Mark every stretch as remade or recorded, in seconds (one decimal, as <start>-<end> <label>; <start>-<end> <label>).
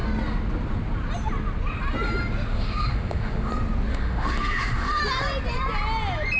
0.0-2.5 recorded; 2.5-3.5 remade; 3.5-3.9 recorded; 3.9-5.0 remade; 5.0-6.4 recorded